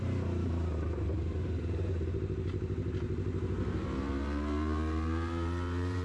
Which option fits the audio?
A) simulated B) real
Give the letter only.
A